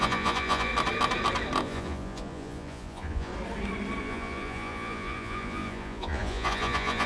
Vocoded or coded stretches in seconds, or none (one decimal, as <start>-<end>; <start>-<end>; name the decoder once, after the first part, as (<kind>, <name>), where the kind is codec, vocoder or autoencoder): 0.0-0.7 (vocoder, Vocos); 1.6-3.3; 4.0-7.1